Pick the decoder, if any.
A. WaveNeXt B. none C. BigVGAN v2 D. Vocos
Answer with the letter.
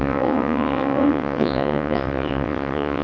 A